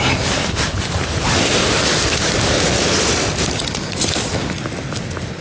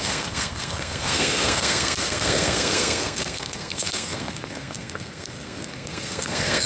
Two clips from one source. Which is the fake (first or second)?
second